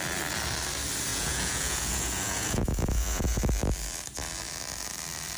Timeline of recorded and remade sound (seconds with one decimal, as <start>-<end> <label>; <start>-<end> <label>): 0.0-1.1 recorded; 1.1-3.4 remade; 3.4-5.4 recorded